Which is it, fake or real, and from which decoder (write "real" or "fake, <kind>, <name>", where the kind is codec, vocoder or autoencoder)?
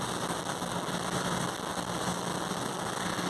real